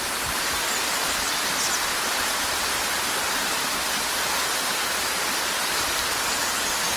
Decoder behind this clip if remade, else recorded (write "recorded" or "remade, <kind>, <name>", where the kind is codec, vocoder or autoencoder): remade, vocoder, BigVGAN v2